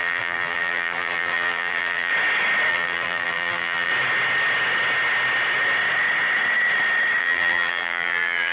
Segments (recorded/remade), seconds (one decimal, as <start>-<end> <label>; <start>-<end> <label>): 0.0-2.1 remade; 2.1-2.7 recorded; 2.7-3.9 remade; 3.9-7.2 recorded; 7.2-8.5 remade